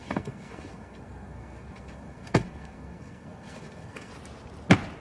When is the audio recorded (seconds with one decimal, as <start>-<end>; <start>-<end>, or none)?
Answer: 4.1-5.0